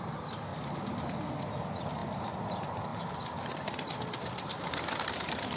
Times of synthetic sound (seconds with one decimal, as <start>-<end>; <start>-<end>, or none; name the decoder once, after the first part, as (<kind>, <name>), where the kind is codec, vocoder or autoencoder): none

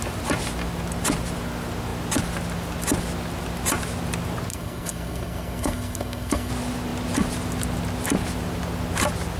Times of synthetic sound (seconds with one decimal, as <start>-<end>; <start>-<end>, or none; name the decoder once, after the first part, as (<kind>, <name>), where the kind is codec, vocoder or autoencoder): 4.5-6.5 (codec, SNAC)

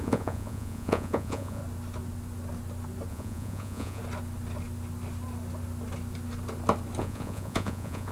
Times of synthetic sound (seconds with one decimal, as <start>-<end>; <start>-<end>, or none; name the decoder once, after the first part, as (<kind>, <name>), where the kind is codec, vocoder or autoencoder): 0.0-1.6 (vocoder, Vocos); 3.1-4.0; 7.0-8.1

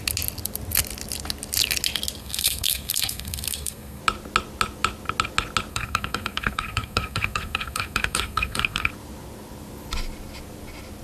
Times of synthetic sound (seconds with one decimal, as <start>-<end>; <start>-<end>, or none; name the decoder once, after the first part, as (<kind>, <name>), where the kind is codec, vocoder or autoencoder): 2.2-4.0 (codec, SNAC); 5.7-8.9

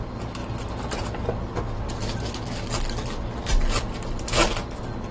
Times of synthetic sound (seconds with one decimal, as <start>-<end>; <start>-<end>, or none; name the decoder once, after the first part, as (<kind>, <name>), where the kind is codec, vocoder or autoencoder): none